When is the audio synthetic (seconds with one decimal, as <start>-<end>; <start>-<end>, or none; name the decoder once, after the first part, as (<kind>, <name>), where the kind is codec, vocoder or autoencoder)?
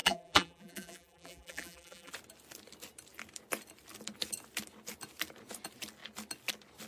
0.0-2.1 (vocoder, BigVGAN v2)